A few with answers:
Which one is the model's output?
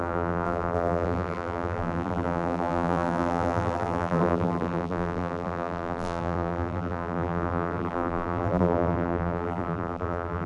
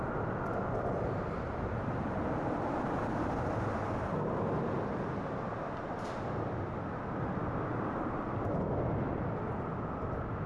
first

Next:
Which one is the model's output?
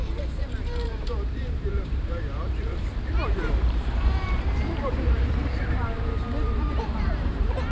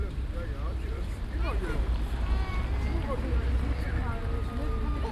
first